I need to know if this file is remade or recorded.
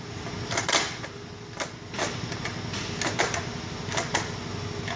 recorded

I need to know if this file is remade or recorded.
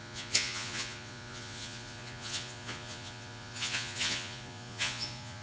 remade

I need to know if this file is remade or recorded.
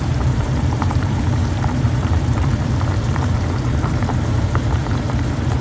remade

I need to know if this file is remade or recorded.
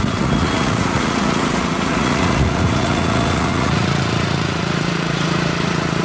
remade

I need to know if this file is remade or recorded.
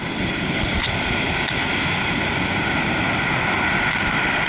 recorded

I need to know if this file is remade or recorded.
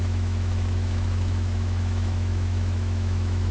remade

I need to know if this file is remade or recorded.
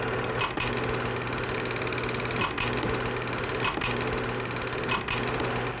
recorded